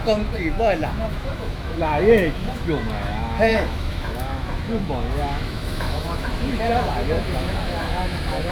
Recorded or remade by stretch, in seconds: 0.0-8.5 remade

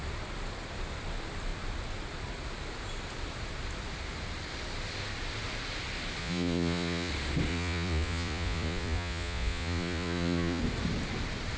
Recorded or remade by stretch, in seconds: 0.0-6.2 recorded; 6.2-7.1 remade; 7.1-7.5 recorded; 7.5-10.6 remade; 10.6-11.6 recorded

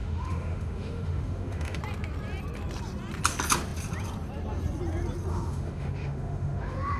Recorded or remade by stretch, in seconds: 0.0-1.8 remade; 1.8-5.3 recorded; 5.3-7.0 remade

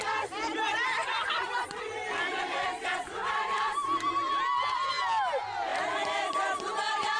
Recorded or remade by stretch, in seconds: 0.0-4.3 remade; 4.3-5.7 recorded; 5.7-6.3 remade; 6.3-7.2 recorded

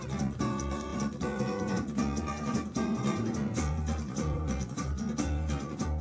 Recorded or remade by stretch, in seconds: 0.0-6.0 remade